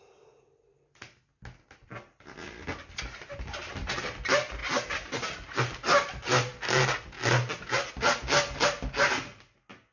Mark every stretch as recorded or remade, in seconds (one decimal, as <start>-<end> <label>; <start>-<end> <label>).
0.0-9.9 recorded